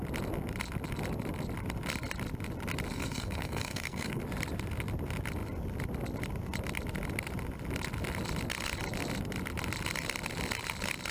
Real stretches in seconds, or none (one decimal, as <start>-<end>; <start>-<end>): 0.0-2.9; 4.2-11.1

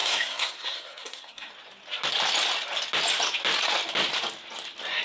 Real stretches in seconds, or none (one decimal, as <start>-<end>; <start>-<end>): 1.5-5.0

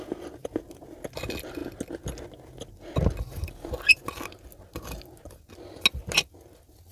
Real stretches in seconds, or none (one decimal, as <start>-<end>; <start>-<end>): 0.0-6.9

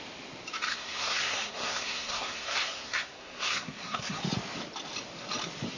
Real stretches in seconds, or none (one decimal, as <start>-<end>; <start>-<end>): 0.0-0.7; 4.2-5.8